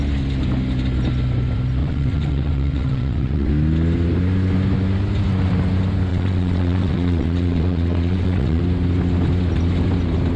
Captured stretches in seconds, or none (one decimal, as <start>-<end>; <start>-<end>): 0.0-1.8; 3.5-6.1; 8.6-10.4